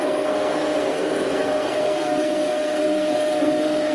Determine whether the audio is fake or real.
fake